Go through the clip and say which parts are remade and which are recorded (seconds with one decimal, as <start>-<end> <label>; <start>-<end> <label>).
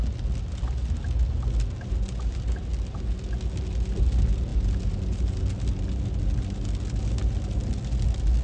0.0-8.4 recorded